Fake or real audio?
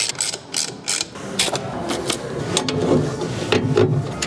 real